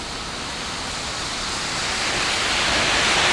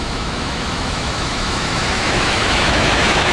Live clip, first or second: first